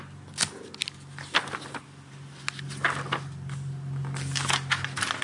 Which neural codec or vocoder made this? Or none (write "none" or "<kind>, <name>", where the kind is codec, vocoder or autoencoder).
none